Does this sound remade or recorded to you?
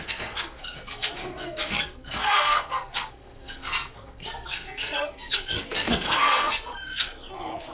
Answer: remade